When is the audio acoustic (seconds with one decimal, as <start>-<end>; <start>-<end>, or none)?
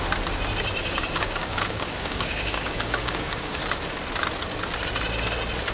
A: 0.0-0.8; 3.6-5.7